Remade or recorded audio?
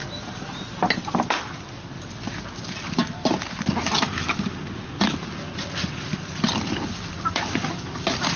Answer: recorded